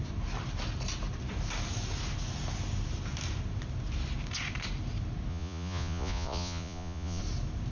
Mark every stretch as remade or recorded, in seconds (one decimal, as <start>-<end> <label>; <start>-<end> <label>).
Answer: 0.0-5.3 recorded; 5.3-7.2 remade; 7.2-7.7 recorded